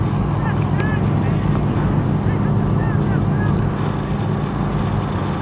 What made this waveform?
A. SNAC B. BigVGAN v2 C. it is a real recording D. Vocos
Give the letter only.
C